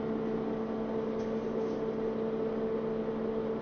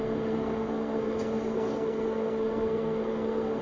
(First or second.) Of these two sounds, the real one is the first